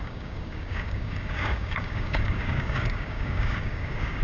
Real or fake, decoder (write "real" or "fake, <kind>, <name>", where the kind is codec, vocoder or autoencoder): fake, codec, DAC